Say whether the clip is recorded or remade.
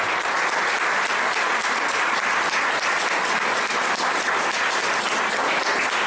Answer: recorded